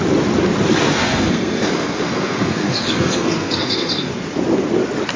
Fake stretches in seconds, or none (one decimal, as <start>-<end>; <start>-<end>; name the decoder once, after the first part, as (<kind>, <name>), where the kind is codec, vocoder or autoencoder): 1.0-4.1 (codec, SNAC)